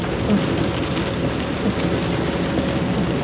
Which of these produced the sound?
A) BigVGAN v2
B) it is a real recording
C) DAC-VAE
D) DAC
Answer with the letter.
B